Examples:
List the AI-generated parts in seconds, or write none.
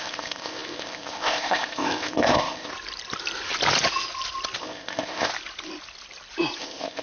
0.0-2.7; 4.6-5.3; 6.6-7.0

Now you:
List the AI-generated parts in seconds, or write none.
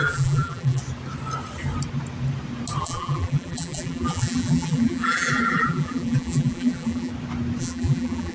0.0-0.8; 2.8-7.1; 7.6-8.3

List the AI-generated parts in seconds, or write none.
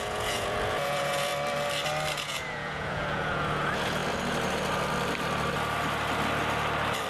0.0-1.3; 2.2-4.0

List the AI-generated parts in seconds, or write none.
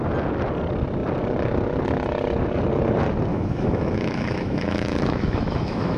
3.3-6.0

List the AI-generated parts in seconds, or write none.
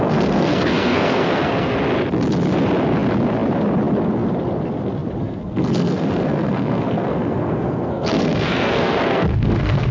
0.0-1.7; 5.2-9.9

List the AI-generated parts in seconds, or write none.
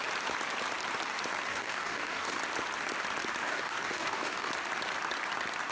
1.5-2.4; 3.4-4.5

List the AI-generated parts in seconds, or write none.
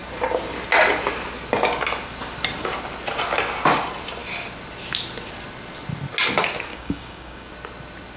6.7-7.5